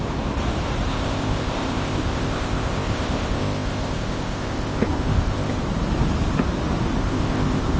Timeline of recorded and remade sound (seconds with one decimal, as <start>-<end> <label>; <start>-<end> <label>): 0.0-0.9 recorded; 0.9-5.6 remade; 5.6-7.0 recorded; 7.0-7.8 remade